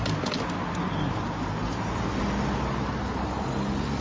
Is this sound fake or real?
real